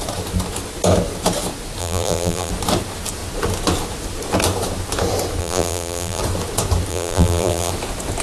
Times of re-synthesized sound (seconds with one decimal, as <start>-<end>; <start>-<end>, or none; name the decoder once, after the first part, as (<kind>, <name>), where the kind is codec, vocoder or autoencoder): 1.8-2.5 (vocoder, BigVGAN v2); 5.4-6.2; 6.9-7.7